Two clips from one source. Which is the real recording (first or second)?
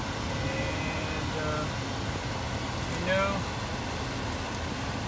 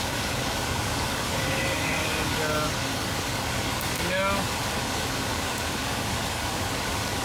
first